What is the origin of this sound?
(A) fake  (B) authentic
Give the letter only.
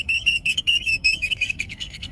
A